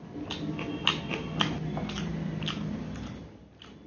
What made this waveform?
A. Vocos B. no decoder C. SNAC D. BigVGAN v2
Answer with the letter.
B